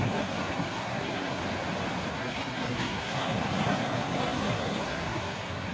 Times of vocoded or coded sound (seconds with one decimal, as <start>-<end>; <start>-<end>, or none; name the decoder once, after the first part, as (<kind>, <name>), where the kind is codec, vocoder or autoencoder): 0.0-1.4 (codec, SNAC); 2.1-5.7